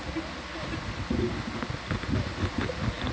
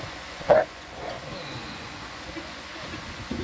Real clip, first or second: first